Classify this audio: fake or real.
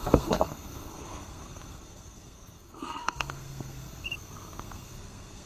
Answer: fake